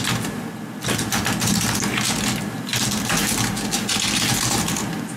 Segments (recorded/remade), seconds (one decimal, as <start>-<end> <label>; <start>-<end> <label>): 0.0-5.2 recorded